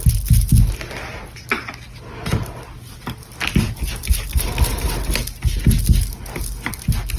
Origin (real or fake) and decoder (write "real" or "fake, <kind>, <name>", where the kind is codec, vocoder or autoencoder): real